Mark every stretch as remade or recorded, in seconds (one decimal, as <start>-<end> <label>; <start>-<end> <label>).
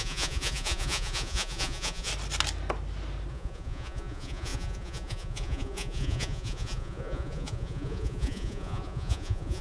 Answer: 0.0-2.1 remade; 2.1-3.3 recorded; 3.3-9.6 remade